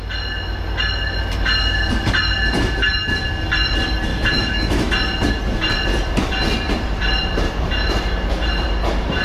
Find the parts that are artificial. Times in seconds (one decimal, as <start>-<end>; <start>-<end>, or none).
4.1-4.9